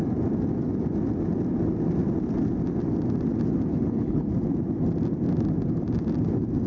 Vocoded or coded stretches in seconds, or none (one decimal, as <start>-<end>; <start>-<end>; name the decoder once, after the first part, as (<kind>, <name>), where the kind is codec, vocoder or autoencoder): 3.7-4.3 (codec, HILCodec)